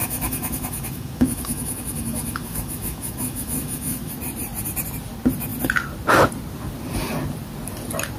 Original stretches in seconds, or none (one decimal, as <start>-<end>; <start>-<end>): 4.1-8.2